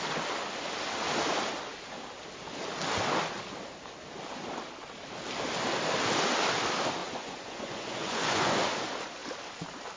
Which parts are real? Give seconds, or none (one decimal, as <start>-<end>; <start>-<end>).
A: 0.0-7.0; 8.7-10.0

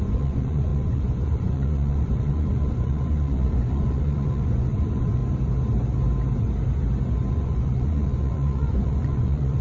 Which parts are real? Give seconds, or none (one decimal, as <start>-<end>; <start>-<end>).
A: 5.2-7.3

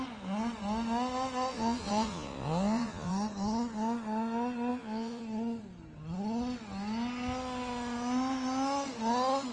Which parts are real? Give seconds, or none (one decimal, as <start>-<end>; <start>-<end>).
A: 0.0-1.5; 3.1-4.7; 5.2-9.5